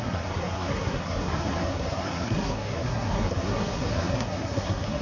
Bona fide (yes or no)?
no